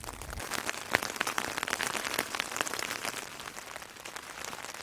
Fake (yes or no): no